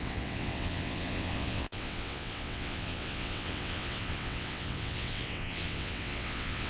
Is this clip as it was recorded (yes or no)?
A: no